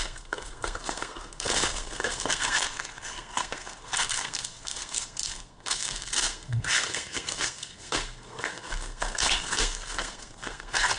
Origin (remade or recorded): remade